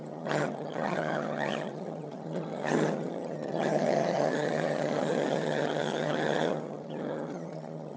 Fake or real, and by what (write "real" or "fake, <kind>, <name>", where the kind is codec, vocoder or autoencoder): fake, vocoder, HiFi-GAN